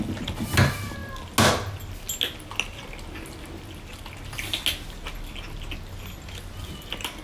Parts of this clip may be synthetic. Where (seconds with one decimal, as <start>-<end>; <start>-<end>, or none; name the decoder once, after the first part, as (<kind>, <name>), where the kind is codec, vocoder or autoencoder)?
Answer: none